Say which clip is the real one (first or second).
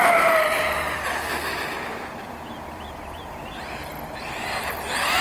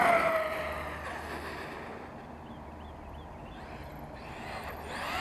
second